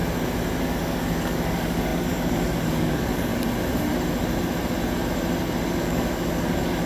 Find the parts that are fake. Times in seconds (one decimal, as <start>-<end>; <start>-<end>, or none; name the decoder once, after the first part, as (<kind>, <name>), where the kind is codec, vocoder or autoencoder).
0.6-3.3 (codec, DAC); 5.8-6.9